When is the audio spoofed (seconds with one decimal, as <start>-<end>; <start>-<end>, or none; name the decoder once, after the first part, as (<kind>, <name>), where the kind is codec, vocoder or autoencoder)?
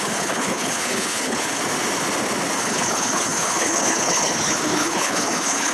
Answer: 0.0-1.6 (codec, HILCodec); 2.6-5.7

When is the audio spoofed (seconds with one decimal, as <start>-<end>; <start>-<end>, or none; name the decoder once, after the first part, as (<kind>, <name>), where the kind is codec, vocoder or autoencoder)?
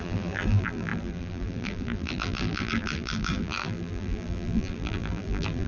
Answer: 0.0-5.7 (vocoder, BigVGAN v2)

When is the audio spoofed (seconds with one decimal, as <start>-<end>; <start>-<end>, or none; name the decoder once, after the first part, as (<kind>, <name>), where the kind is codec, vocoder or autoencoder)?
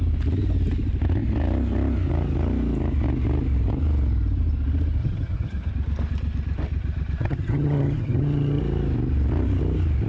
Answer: 5.0-5.7 (vocoder, HiFi-GAN); 7.2-8.6